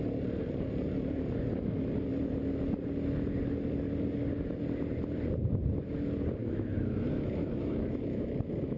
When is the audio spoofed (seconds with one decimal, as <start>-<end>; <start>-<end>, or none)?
6.4-8.8